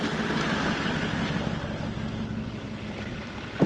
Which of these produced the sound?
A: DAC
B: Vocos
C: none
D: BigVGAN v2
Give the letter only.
C